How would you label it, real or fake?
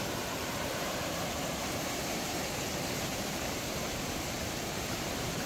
fake